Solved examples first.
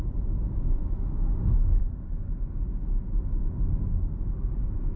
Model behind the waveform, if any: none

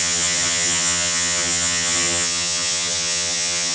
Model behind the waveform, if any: vocoder, HiFi-GAN